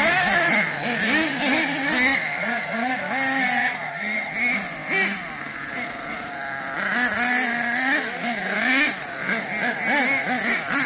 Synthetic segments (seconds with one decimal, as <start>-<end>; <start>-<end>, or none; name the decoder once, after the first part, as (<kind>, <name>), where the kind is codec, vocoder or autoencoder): 2.4-2.9 (vocoder, HiFi-GAN); 3.6-4.3